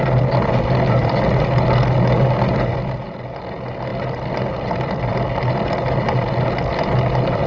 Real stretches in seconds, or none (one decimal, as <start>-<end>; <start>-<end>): 0.0-7.5